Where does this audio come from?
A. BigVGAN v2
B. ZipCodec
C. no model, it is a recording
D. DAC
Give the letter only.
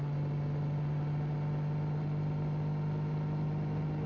C